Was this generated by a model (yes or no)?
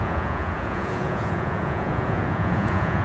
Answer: yes